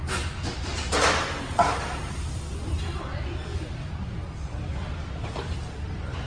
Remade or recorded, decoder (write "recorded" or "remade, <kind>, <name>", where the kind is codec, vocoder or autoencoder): recorded